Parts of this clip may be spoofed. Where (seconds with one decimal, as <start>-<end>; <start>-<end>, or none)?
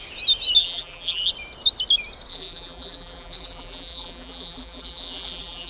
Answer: 0.6-1.3; 2.3-5.7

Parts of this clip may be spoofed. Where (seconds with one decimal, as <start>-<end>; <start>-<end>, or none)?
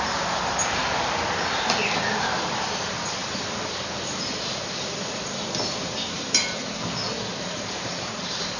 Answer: 0.0-0.8; 2.2-6.6; 7.4-8.6